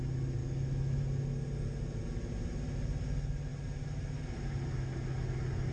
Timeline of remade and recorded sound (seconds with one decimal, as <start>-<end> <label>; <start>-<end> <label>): 0.0-0.4 recorded; 0.4-1.0 remade; 1.0-5.7 recorded